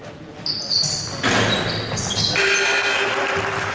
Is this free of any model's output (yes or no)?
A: yes